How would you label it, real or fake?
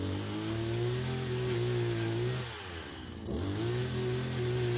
real